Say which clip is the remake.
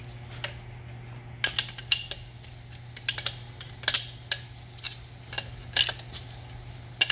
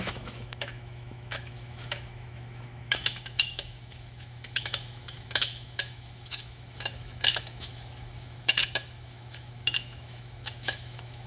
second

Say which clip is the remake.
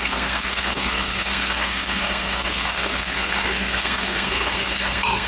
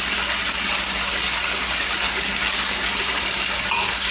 first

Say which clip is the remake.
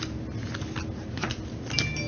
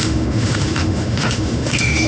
second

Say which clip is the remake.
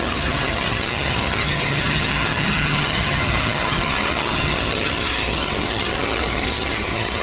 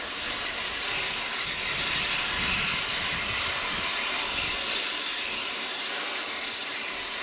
first